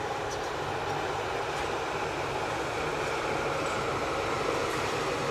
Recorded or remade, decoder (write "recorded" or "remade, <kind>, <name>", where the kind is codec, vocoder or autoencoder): recorded